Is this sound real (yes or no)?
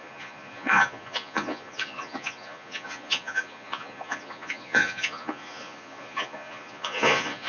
no